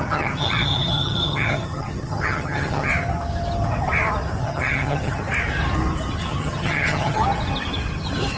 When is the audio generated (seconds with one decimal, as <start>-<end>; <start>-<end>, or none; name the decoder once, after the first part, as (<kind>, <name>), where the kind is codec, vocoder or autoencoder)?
0.0-2.9 (vocoder, HiFi-GAN); 4.4-5.2; 6.2-7.2

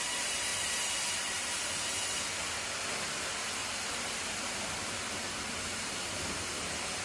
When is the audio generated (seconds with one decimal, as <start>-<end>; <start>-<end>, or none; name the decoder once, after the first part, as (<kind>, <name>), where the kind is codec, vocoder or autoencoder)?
3.6-7.0 (vocoder, BigVGAN v2)

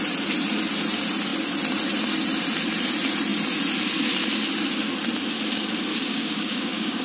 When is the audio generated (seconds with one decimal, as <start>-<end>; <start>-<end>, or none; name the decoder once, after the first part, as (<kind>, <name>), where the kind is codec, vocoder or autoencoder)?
5.9-7.0 (codec, DAC)

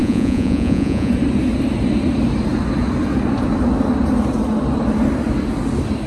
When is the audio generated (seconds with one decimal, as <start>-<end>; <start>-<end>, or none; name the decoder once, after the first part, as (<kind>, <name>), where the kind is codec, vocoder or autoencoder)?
0.0-1.1 (vocoder, Vocos)

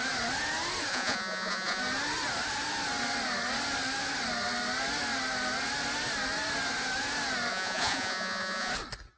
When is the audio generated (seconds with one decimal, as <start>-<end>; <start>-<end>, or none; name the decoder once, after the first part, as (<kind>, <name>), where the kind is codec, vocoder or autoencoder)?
0.9-1.8 (vocoder, Vocos); 7.5-8.7

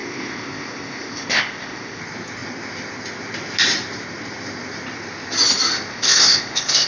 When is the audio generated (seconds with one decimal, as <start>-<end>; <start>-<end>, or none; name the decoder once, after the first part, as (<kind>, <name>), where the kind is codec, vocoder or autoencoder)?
0.0-2.0 (codec, ZipCodec); 5.9-6.9